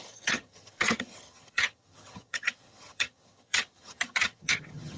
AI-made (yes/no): yes